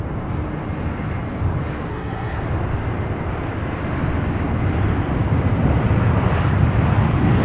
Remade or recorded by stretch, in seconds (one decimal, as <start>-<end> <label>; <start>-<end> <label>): 0.0-1.9 recorded; 1.9-2.4 remade; 2.4-7.4 recorded